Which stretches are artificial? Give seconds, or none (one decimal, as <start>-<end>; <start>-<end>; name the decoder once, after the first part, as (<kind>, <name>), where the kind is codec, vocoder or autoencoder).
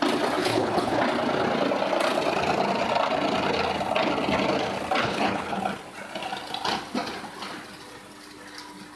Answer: 0.4-1.0 (codec, HILCodec); 5.0-5.6